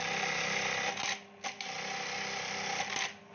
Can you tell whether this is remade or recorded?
recorded